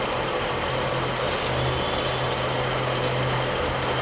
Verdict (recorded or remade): recorded